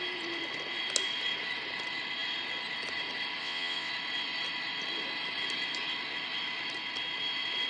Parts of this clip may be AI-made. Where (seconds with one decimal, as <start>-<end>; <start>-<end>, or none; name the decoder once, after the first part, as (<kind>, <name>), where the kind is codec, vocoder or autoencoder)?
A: 3.4-3.9 (vocoder, WaveNeXt)